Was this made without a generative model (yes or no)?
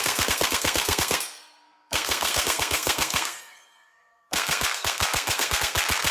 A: no